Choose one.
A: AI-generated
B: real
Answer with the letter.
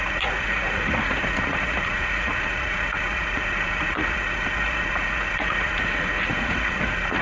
A